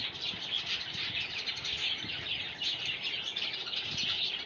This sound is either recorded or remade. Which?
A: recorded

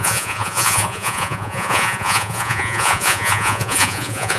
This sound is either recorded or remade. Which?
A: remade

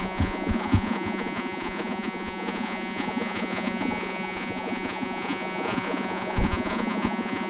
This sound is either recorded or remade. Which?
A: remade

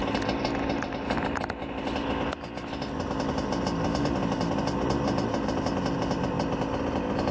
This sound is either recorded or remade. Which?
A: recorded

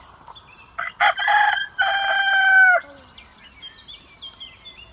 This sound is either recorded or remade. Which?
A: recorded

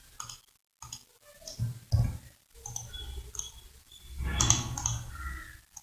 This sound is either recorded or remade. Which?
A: recorded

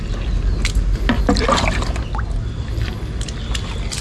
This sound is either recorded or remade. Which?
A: recorded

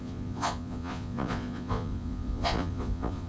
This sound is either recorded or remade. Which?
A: remade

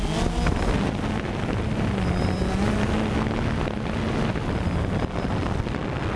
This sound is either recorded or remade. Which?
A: recorded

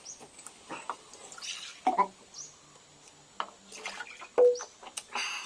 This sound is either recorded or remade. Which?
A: recorded